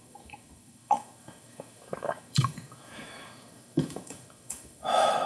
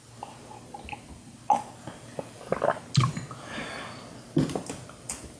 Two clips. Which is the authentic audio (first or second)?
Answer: second